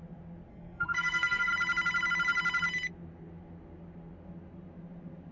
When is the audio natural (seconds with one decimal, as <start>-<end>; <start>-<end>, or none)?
0.0-0.5; 1.5-5.3